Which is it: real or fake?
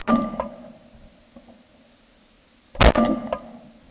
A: real